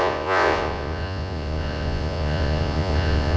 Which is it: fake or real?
fake